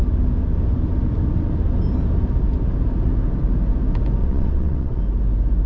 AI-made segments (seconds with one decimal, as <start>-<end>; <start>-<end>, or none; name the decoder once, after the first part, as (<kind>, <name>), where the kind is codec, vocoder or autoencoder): 4.2-5.0 (vocoder, WaveNeXt)